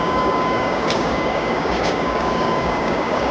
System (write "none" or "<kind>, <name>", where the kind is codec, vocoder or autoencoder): codec, DAC